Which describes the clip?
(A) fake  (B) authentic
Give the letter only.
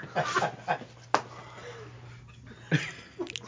B